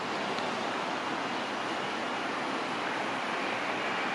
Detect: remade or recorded recorded